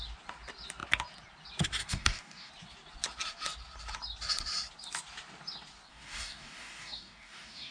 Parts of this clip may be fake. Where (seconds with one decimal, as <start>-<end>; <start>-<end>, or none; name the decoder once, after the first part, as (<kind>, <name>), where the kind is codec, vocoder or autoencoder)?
1.8-2.5 (codec, DAC); 5.9-7.7